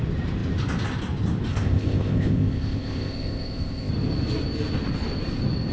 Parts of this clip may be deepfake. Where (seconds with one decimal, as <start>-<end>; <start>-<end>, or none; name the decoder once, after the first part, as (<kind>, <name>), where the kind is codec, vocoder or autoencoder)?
1.5-3.9 (codec, ZipCodec)